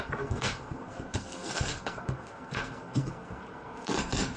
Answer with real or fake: fake